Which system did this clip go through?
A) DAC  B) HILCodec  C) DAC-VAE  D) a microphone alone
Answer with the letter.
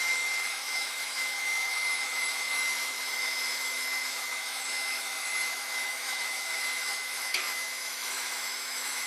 C